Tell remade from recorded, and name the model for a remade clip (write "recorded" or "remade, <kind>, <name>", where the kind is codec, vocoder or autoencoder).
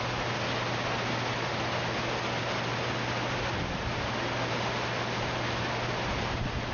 recorded